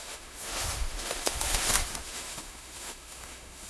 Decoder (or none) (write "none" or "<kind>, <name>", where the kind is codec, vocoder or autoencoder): autoencoder, DAC-VAE